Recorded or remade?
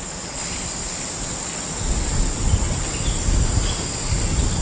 recorded